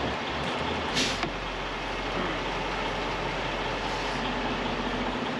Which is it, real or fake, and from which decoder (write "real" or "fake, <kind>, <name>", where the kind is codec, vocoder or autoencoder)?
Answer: real